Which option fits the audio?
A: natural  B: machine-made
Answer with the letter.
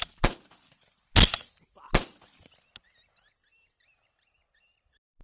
A